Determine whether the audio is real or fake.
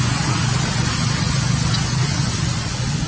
fake